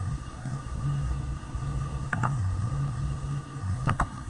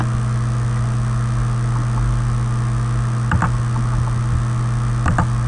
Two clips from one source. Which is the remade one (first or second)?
first